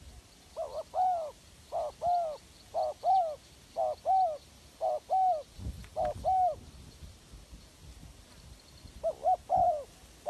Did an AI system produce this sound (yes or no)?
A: no